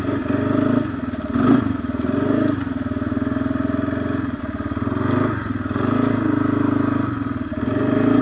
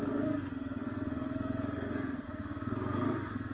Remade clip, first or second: second